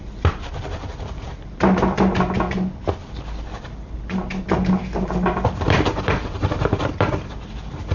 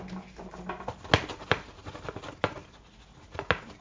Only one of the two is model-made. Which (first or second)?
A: first